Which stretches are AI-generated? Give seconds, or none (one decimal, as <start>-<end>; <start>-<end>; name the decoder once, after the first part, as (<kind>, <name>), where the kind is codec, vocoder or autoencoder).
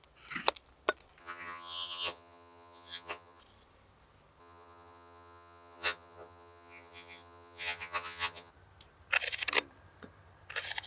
1.2-3.4 (vocoder, HiFi-GAN); 4.4-8.5